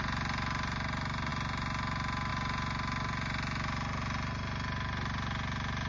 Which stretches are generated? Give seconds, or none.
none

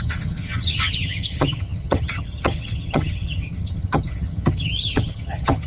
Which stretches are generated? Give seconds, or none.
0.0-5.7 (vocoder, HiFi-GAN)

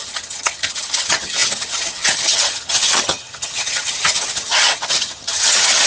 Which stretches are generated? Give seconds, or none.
0.0-5.9 (vocoder, HiFi-GAN)

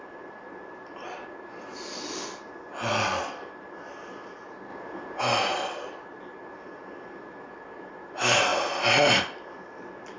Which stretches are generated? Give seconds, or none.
none

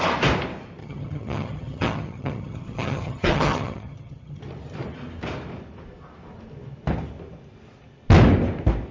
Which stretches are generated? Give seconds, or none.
0.8-4.4 (vocoder, HiFi-GAN)

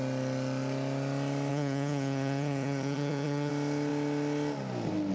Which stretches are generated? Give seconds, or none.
1.5-3.5 (vocoder, HiFi-GAN)